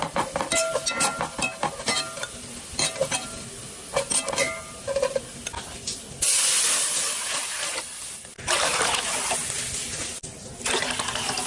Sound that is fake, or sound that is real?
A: real